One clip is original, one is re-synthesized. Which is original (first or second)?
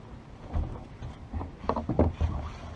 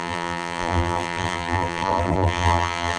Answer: first